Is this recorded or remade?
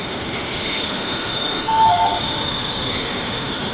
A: remade